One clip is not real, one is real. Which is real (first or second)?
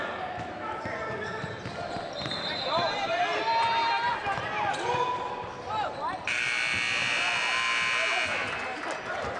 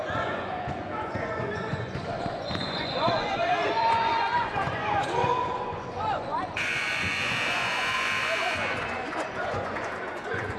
first